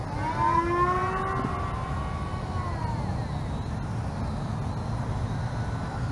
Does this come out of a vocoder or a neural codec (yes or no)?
no